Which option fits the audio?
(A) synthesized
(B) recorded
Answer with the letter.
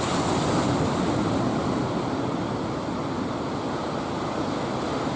B